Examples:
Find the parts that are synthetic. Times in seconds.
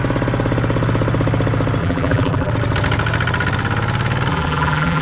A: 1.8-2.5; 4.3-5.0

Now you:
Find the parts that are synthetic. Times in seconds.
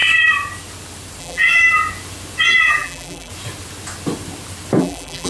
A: 1.2-1.6; 2.6-3.3; 4.8-5.3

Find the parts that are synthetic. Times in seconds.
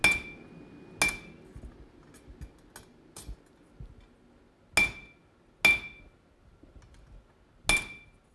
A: none